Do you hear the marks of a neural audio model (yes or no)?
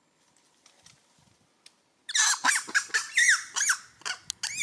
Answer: no